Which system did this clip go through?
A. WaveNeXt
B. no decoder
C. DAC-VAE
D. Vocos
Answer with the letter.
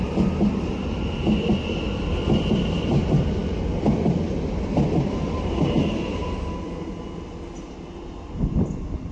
B